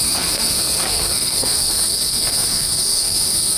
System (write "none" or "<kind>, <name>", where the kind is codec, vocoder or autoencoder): codec, SNAC